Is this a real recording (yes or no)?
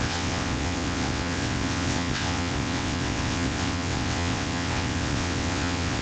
no